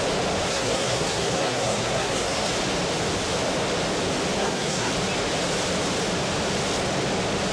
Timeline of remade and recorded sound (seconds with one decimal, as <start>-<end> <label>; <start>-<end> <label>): 0.0-0.5 recorded; 0.5-2.5 remade; 2.5-4.4 recorded; 4.4-4.9 remade; 4.9-7.5 recorded